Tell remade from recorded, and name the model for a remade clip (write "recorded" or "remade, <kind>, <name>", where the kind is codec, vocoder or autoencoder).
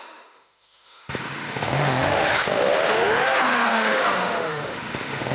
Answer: remade, autoencoder, DAC-VAE